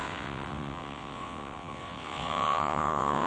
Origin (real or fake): fake